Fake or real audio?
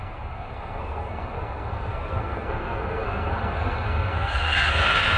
fake